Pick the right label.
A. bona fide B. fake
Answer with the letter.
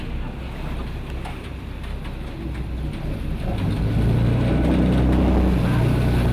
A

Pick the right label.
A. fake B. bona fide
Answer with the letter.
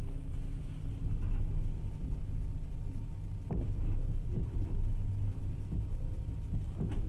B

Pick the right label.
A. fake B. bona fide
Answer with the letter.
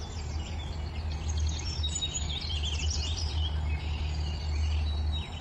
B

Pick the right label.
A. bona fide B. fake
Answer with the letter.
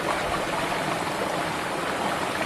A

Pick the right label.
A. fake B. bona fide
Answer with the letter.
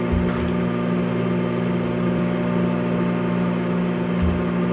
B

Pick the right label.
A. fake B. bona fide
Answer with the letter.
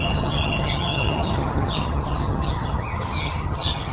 A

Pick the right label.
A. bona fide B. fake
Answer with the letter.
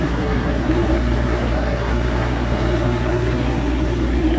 B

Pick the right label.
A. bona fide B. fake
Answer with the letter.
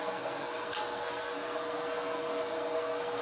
B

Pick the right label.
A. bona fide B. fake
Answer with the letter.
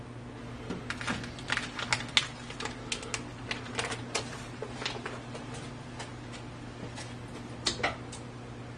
A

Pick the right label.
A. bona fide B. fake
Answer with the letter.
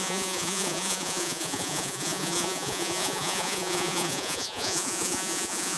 B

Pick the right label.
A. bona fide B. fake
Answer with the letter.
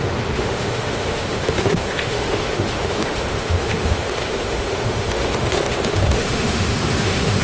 B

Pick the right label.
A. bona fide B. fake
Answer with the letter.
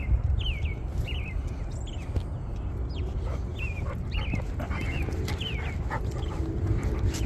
A